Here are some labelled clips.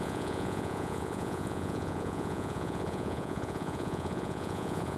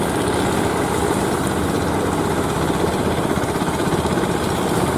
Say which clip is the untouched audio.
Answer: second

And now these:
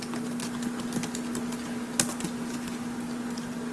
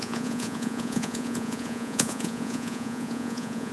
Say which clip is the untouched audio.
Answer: first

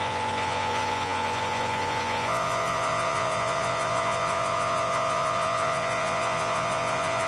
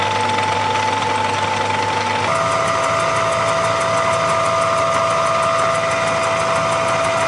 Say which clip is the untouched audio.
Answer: second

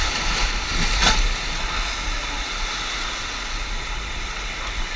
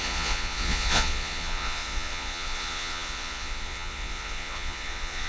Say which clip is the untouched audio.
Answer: first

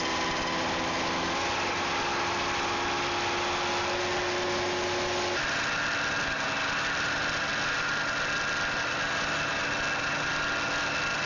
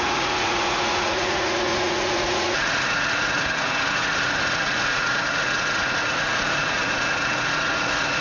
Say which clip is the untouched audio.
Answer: first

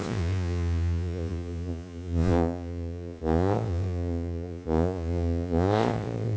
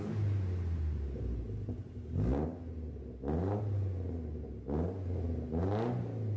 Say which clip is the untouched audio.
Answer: second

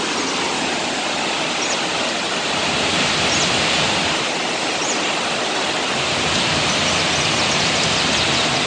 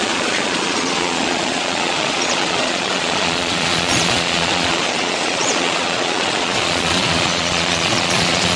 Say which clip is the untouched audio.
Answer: first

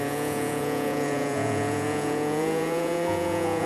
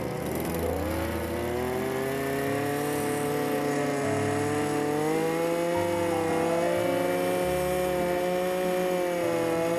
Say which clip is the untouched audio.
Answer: second